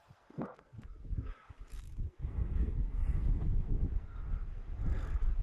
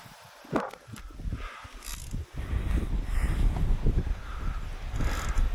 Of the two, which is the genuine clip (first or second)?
second